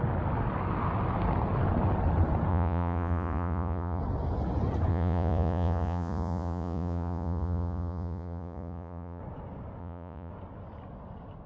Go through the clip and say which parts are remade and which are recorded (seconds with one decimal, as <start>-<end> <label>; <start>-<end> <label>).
0.0-2.5 recorded; 2.5-4.0 remade; 4.0-4.9 recorded; 4.9-9.2 remade; 9.2-9.8 recorded; 9.8-10.3 remade; 10.3-11.5 recorded